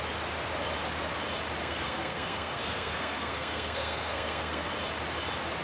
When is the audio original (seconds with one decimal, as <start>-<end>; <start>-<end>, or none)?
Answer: 0.0-1.6; 4.7-5.6